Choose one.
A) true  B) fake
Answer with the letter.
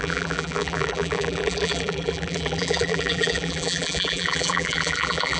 B